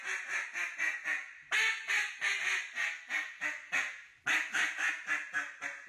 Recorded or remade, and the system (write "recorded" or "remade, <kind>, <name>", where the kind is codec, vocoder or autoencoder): recorded